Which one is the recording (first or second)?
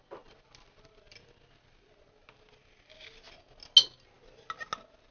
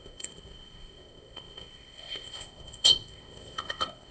first